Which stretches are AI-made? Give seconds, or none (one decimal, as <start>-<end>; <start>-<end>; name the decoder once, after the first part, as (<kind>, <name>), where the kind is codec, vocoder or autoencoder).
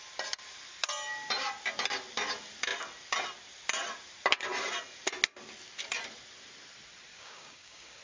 7.1-8.0 (codec, DAC)